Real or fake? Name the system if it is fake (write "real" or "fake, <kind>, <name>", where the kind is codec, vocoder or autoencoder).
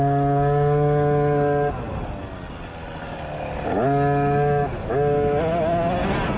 real